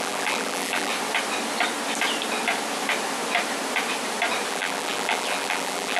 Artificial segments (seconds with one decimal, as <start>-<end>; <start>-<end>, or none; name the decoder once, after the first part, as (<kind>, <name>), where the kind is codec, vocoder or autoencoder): 0.0-0.9 (vocoder, BigVGAN v2); 4.5-6.0